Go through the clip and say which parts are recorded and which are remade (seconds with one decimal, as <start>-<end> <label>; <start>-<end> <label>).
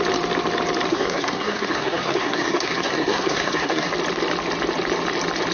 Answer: 0.0-0.9 recorded; 0.9-3.9 remade; 3.9-5.5 recorded